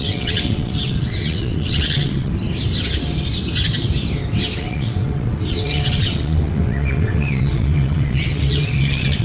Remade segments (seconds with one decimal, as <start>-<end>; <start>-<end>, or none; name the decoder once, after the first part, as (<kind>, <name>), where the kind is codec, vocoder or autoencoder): 0.0-2.3 (vocoder, WaveNeXt); 4.6-9.2